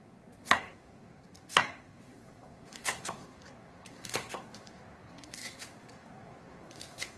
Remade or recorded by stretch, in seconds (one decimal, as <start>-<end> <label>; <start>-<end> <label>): 0.0-7.2 remade

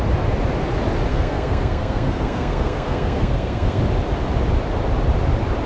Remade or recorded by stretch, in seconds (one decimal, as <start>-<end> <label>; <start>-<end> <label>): 0.0-1.1 recorded; 1.1-3.8 remade; 3.8-5.7 recorded

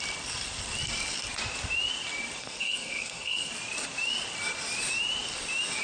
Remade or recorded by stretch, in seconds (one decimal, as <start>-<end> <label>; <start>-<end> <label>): 0.0-2.4 recorded; 2.4-3.5 remade; 3.5-5.8 recorded

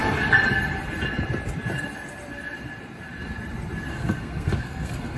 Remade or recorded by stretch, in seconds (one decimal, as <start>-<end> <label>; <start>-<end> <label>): 0.0-3.9 recorded; 3.9-5.2 remade